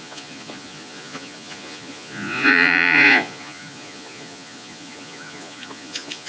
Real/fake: fake